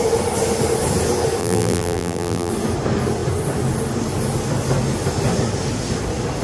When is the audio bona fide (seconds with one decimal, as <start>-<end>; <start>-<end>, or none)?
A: 0.0-1.4; 2.5-6.4